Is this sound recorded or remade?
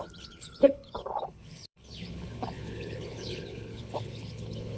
remade